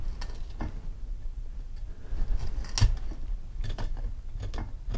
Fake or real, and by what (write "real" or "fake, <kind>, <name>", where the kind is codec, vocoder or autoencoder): real